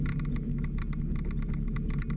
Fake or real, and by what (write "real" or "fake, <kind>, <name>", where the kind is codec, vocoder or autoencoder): real